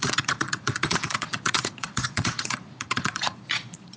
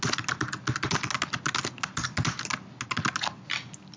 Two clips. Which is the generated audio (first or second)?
first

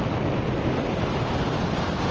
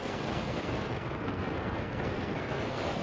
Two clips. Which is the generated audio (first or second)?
second